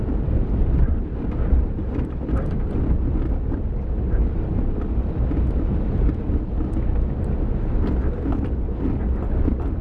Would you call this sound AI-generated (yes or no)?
no